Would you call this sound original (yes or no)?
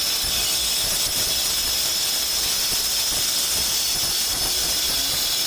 yes